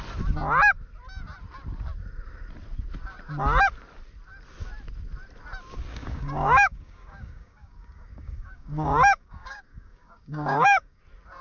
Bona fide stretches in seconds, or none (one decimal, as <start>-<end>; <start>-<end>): 0.0-5.9; 11.0-11.4